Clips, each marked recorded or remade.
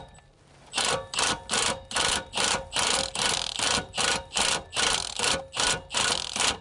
recorded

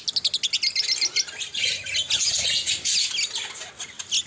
recorded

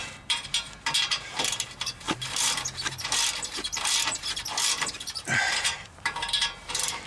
remade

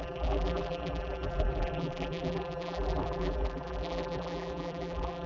remade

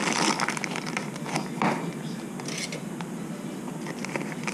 recorded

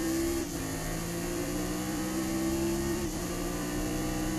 remade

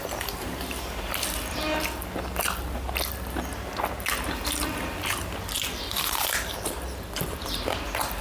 remade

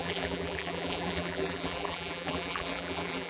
remade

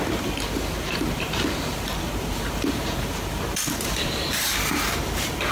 remade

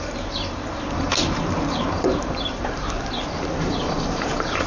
remade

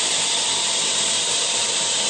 remade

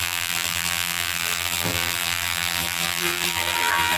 remade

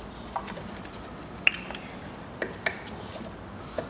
remade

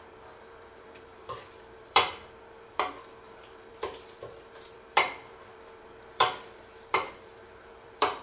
remade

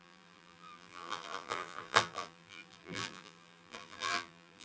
remade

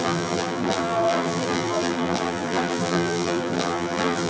remade